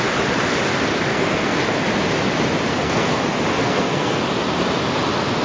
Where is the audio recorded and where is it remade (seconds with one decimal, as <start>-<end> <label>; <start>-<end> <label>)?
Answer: 0.0-1.1 recorded; 1.1-1.6 remade; 1.6-2.7 recorded; 2.7-3.2 remade; 3.2-3.6 recorded; 3.6-4.2 remade; 4.2-5.4 recorded